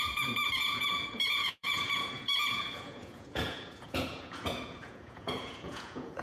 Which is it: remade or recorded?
remade